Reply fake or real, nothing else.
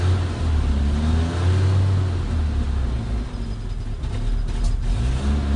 real